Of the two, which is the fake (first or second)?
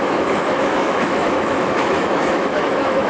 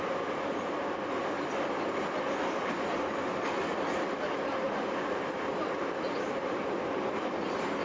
first